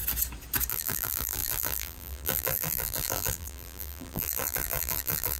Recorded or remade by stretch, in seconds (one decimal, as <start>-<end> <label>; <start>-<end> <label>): 0.0-0.7 recorded; 0.7-5.4 remade